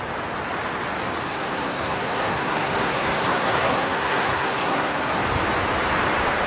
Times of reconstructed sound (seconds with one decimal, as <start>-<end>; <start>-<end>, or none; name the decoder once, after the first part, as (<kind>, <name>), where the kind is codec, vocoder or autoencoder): 1.2-5.1 (codec, SNAC)